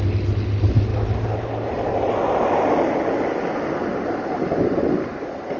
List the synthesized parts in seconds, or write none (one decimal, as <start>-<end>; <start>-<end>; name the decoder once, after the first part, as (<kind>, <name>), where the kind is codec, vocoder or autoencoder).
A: none